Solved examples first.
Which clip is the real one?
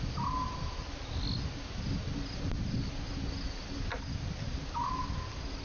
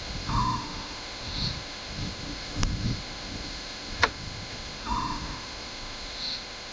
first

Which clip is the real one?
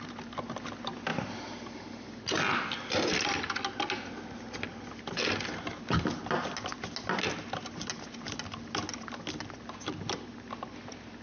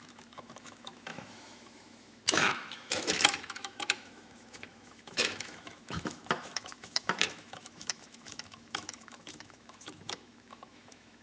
first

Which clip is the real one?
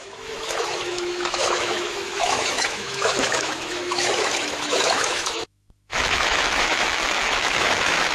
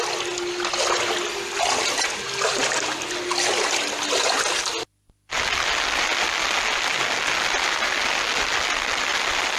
second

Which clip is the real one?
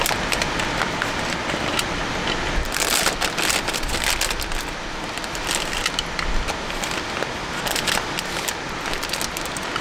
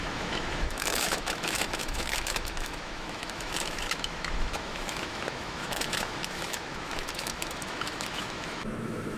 first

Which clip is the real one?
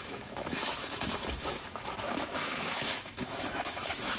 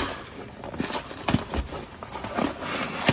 second